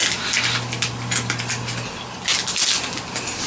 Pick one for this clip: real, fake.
real